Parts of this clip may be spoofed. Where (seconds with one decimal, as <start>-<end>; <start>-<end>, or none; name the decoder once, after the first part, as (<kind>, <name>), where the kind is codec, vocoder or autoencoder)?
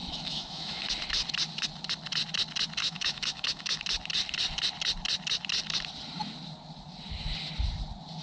0.0-0.9 (autoencoder, DAC-VAE); 2.8-3.8